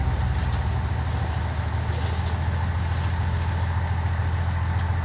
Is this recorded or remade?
recorded